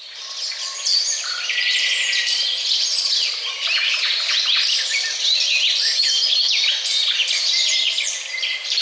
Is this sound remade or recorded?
remade